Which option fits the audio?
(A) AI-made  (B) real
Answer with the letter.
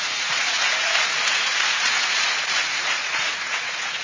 A